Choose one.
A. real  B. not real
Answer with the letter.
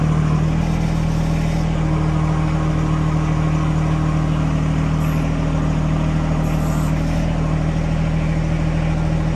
A